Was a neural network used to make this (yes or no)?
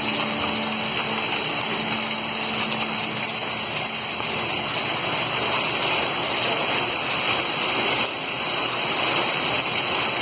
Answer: no